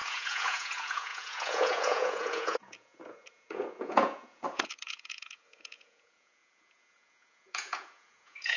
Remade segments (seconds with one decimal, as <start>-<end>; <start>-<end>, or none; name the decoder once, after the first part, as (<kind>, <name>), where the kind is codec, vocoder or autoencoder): 0.0-8.6 (vocoder, Vocos)